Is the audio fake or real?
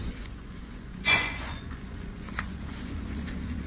fake